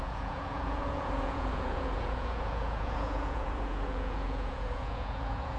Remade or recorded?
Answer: remade